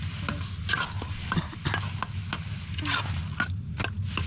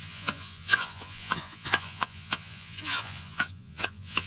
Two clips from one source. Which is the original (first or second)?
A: first